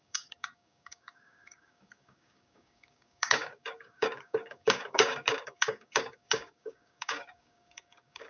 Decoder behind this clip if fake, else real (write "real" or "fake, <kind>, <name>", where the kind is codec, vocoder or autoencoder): fake, codec, DAC